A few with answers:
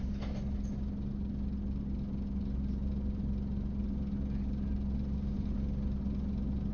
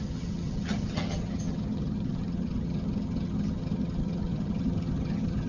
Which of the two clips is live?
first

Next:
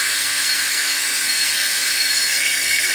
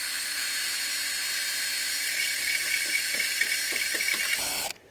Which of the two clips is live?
second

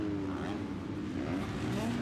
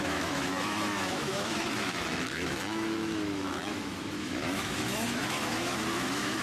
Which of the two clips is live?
first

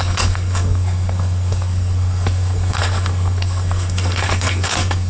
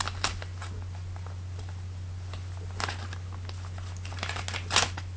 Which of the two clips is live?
second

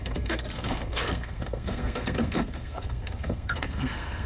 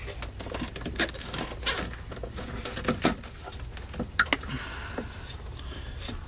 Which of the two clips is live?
second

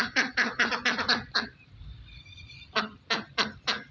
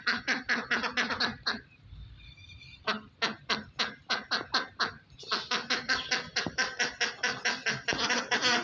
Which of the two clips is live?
second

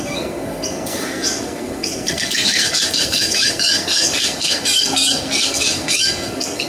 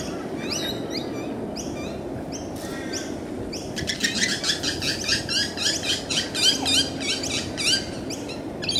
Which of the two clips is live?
second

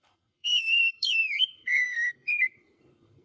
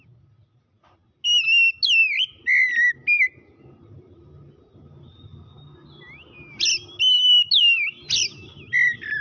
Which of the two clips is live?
second